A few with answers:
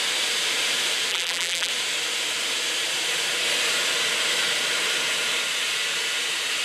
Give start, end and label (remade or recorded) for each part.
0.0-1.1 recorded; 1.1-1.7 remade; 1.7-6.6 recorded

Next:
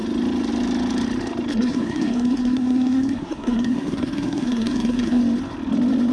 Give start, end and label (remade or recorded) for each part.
0.0-1.5 recorded; 1.5-5.2 remade; 5.2-6.1 recorded

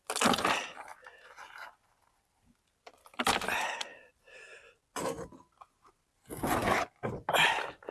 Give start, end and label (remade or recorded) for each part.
0.0-7.9 recorded

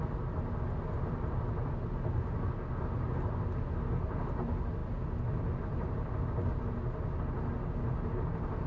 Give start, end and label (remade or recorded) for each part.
0.0-8.7 recorded

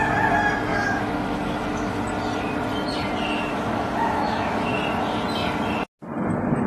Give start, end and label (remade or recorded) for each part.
0.0-0.7 recorded; 0.7-2.0 remade; 2.0-3.5 recorded; 3.5-4.7 remade; 4.7-6.7 recorded